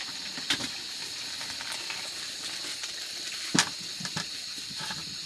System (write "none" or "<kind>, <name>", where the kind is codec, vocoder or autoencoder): none